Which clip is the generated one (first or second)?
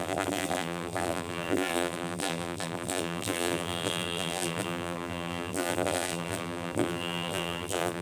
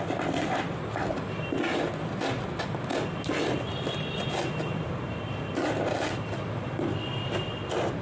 first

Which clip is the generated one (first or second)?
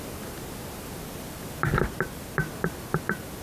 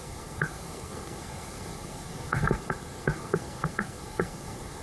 second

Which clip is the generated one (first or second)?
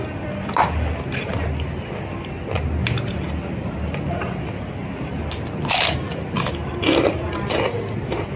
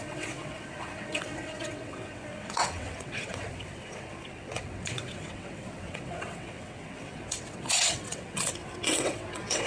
second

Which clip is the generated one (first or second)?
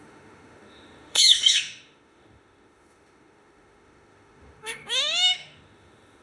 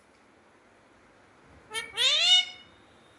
first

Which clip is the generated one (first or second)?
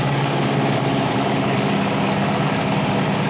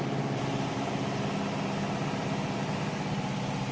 first